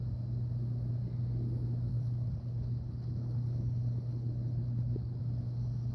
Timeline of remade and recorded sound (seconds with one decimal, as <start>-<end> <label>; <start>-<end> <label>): 0.0-1.9 recorded; 1.9-5.2 remade; 5.2-5.9 recorded